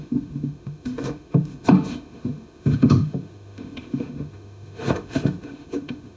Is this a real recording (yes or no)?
no